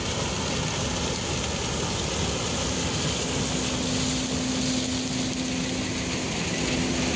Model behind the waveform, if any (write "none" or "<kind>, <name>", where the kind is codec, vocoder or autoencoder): none